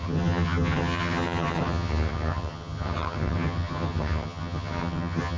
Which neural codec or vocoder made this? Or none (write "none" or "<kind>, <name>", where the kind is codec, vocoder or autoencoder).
vocoder, HiFi-GAN